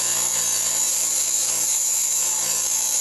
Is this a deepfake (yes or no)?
yes